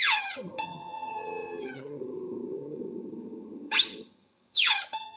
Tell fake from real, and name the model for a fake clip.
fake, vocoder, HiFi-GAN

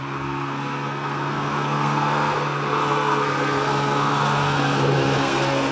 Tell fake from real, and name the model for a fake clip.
fake, codec, SNAC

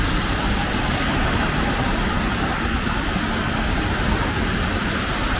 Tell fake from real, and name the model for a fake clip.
real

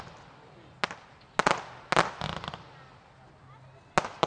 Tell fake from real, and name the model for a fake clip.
real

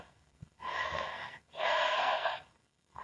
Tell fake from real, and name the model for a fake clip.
fake, codec, SNAC